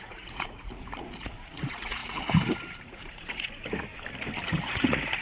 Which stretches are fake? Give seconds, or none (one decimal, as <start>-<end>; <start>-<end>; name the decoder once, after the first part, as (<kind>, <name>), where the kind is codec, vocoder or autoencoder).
0.0-3.9 (vocoder, Vocos); 4.5-5.2